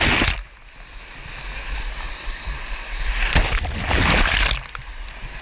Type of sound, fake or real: real